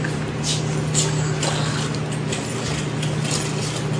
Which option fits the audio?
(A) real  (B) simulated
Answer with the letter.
A